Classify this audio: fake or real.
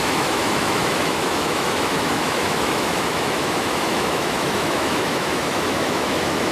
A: fake